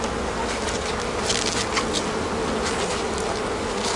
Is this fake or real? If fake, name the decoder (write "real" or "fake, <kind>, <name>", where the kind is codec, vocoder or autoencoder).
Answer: real